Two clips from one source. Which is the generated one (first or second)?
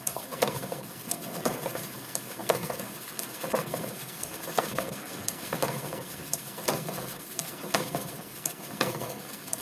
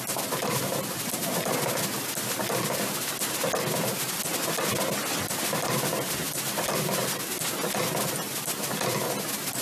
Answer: first